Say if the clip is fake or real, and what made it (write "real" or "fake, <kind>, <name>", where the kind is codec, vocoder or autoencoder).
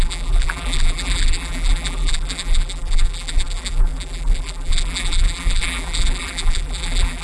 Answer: fake, vocoder, BigVGAN v2